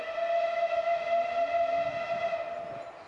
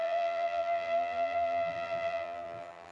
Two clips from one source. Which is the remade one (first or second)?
second